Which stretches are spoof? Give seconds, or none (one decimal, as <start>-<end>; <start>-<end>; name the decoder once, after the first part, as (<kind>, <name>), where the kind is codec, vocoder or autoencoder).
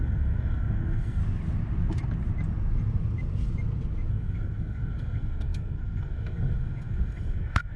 0.0-1.2 (codec, SNAC); 4.1-7.8